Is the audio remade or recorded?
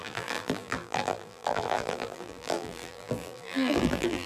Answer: remade